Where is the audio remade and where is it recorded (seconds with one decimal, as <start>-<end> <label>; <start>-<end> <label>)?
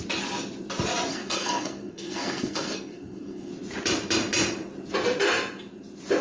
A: 0.0-1.1 recorded; 1.1-3.5 remade; 3.5-6.2 recorded